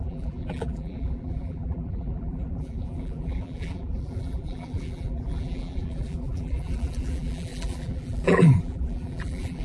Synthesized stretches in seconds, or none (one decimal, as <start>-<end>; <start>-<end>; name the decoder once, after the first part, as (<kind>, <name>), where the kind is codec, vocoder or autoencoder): 0.0-9.6 (vocoder, BigVGAN v2)